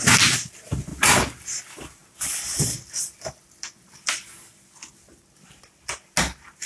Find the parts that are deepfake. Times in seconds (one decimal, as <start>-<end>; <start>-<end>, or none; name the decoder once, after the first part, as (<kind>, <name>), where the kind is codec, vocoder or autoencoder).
none